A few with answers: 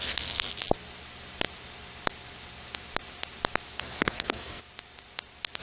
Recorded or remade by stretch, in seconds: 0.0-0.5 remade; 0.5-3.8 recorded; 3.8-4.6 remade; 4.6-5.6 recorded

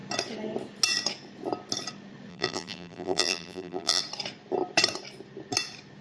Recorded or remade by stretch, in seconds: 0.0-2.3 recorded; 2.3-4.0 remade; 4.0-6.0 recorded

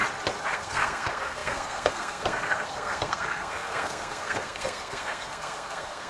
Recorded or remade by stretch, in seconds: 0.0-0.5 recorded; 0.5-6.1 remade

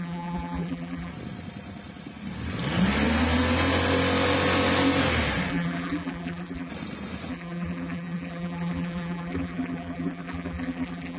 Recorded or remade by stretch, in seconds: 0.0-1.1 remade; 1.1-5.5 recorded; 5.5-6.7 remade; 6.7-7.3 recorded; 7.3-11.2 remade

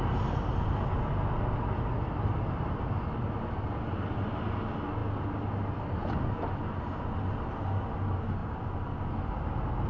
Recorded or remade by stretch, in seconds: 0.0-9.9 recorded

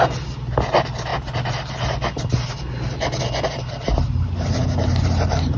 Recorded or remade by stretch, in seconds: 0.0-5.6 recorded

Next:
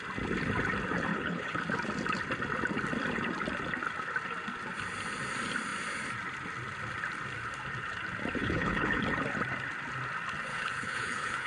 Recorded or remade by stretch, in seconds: 0.0-1.1 recorded; 1.1-1.6 remade; 1.6-8.4 recorded; 8.4-9.0 remade; 9.0-10.5 recorded; 10.5-11.5 remade